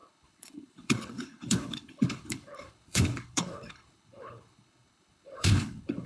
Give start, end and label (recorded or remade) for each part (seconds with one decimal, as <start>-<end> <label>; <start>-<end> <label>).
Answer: 0.0-6.1 remade